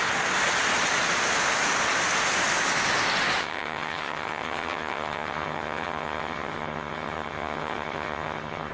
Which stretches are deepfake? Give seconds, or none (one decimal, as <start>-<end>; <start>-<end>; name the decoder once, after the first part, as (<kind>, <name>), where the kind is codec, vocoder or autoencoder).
3.4-8.7 (vocoder, HiFi-GAN)